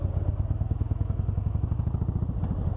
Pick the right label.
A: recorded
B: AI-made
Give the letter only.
A